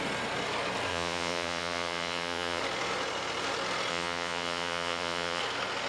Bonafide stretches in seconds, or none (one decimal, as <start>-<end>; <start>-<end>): 0.0-0.9; 2.6-3.9; 5.4-5.9